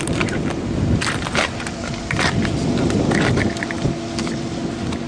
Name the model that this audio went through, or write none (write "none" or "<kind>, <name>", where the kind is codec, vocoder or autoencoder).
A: none